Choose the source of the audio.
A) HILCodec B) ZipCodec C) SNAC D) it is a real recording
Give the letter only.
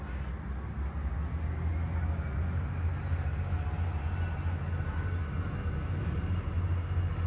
D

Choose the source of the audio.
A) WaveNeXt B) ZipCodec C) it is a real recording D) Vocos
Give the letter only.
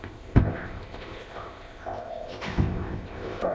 B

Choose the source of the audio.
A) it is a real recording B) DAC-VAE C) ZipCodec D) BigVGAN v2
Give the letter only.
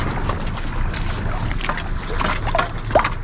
A